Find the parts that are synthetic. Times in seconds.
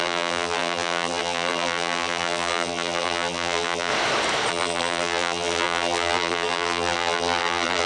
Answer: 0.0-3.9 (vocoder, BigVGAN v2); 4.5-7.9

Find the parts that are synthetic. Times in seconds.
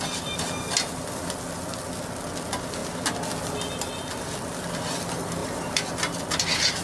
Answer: 5.4-5.9 (vocoder, BigVGAN v2)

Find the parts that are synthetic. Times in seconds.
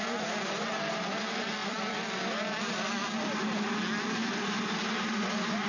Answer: 1.6-2.6 (vocoder, BigVGAN v2)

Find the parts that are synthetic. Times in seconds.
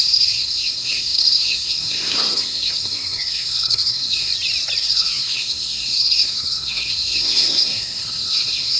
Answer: 0.0-4.3 (codec, SNAC); 4.8-8.8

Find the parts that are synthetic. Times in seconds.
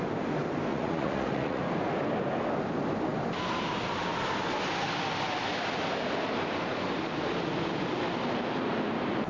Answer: 0.7-1.6 (vocoder, Vocos)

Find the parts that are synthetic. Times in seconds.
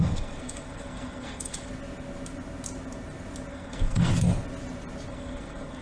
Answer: 0.0-1.7 (codec, SNAC); 3.5-4.1; 5.1-5.8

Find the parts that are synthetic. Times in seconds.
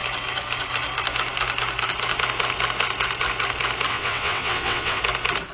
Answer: 3.9-5.0 (vocoder, WaveNeXt)